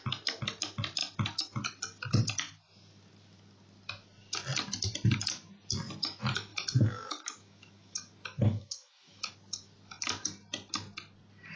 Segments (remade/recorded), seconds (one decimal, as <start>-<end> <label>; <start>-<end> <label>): 0.0-6.5 recorded; 6.5-9.3 remade; 9.3-11.6 recorded